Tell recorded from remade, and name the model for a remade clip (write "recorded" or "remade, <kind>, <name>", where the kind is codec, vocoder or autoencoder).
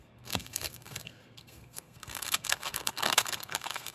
remade, codec, SNAC